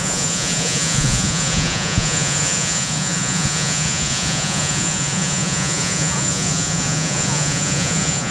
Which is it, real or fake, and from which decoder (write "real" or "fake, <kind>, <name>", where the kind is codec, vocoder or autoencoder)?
fake, vocoder, Vocos